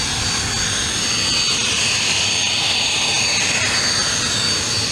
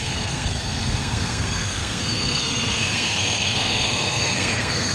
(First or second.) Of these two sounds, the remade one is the second